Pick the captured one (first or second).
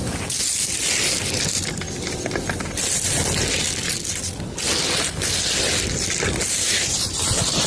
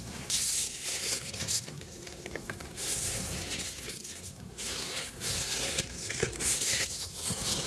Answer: first